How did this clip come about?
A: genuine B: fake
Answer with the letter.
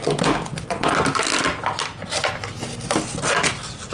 A